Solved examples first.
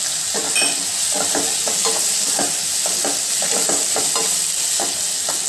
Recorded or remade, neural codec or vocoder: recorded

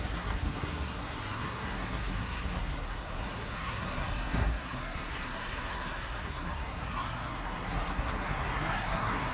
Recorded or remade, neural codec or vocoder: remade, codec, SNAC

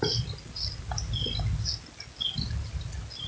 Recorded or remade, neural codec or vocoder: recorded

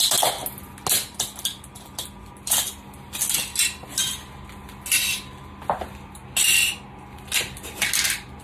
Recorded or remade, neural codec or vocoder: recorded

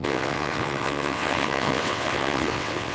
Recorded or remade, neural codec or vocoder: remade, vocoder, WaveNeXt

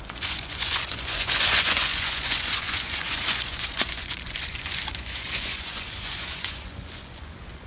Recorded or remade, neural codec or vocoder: remade, vocoder, Vocos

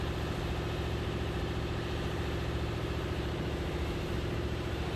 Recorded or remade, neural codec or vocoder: recorded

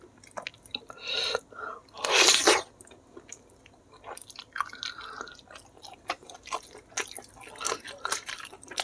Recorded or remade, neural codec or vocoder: recorded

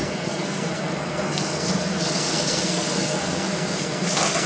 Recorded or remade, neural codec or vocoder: remade, codec, SNAC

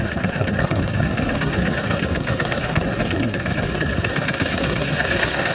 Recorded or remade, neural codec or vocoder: remade, codec, SNAC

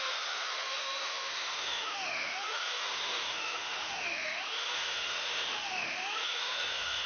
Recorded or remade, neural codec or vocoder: remade, autoencoder, DAC-VAE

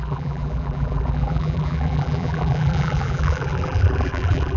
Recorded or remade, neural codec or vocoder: remade, vocoder, BigVGAN v2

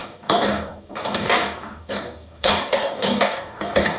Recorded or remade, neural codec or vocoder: remade, codec, DAC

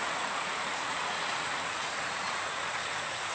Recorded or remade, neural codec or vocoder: remade, vocoder, Vocos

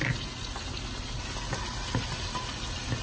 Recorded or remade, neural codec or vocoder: recorded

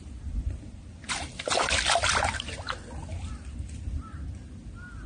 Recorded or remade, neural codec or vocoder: recorded